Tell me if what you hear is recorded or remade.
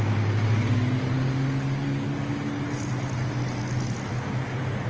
recorded